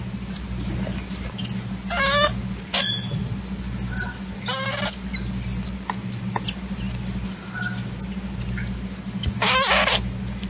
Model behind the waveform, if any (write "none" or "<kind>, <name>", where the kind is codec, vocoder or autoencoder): none